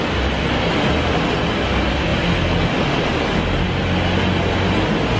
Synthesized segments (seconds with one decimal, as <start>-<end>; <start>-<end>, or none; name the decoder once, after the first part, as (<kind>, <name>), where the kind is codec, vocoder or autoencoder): none